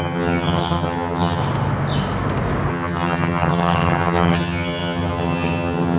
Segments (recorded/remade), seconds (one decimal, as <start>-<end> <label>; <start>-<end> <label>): 0.0-1.4 remade; 1.4-2.7 recorded; 2.7-6.0 remade